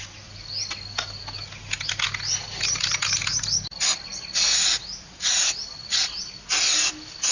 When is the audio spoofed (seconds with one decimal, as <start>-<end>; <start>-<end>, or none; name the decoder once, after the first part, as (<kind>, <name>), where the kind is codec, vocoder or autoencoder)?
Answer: none